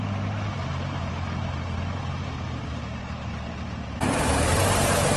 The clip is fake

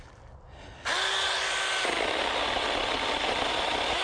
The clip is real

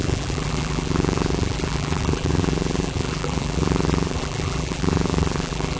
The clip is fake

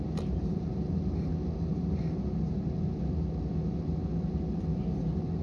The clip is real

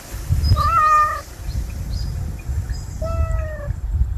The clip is real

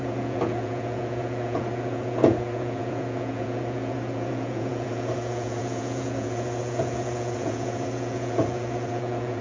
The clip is fake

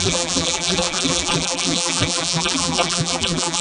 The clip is fake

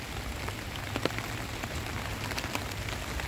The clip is real